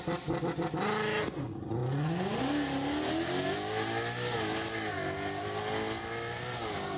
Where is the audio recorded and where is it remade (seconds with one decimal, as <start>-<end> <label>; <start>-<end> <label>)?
0.0-7.0 recorded